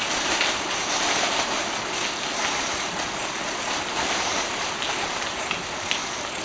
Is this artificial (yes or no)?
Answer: no